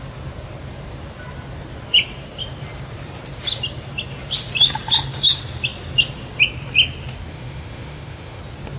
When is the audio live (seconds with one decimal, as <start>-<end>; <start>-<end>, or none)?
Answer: 0.0-7.3; 8.4-8.8